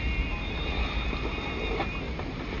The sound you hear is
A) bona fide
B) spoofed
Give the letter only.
A